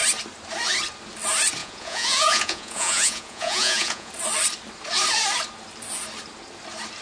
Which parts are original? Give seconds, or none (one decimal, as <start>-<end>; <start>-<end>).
0.0-1.6; 4.1-7.0